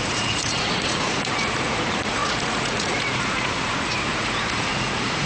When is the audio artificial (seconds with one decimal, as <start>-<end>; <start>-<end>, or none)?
0.0-5.3